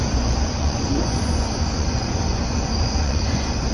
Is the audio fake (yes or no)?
yes